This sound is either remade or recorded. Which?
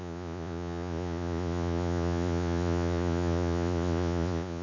remade